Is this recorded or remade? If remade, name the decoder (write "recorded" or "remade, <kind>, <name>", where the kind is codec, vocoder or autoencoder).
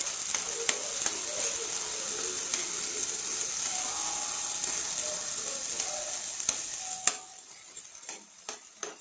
recorded